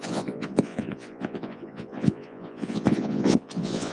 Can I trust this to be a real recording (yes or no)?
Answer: no